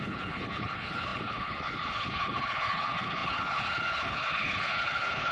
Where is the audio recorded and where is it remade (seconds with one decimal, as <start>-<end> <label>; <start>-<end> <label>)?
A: 0.0-5.3 remade